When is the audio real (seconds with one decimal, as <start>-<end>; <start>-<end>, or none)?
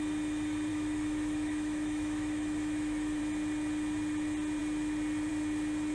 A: 0.0-0.7; 3.2-5.9